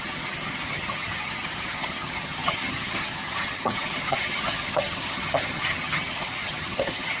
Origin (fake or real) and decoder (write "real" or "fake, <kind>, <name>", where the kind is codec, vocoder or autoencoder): fake, vocoder, HiFi-GAN